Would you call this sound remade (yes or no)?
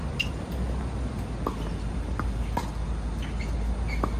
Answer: no